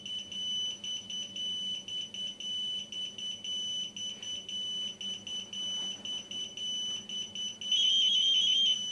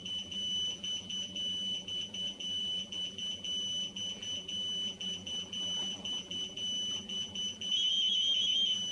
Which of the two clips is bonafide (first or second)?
first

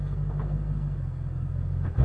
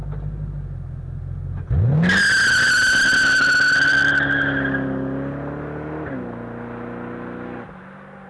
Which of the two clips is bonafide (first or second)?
second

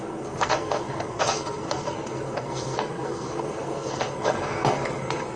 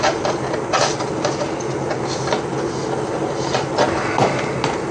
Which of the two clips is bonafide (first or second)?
second